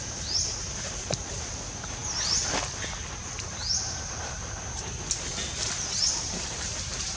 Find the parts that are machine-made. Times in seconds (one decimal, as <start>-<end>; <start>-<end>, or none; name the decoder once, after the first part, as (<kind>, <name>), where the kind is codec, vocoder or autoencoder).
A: 0.0-2.0 (vocoder, BigVGAN v2); 3.5-5.3; 6.0-7.2